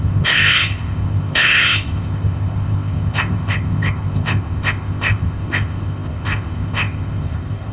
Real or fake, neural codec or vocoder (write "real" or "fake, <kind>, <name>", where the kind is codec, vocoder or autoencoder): fake, codec, ZipCodec